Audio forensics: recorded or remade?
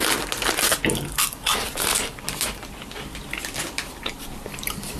recorded